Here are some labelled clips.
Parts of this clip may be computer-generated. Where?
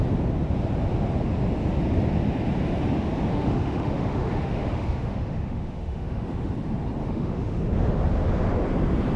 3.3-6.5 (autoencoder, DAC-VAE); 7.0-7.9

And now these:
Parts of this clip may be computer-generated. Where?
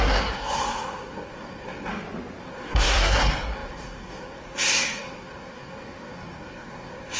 0.0-1.9 (codec, SNAC); 2.4-7.2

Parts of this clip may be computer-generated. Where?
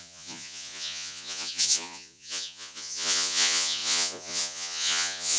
0.0-5.4 (vocoder, Vocos)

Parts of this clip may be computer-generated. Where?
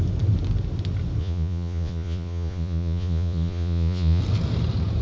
1.2-4.2 (vocoder, Vocos)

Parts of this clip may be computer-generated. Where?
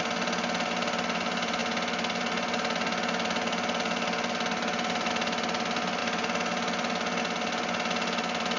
none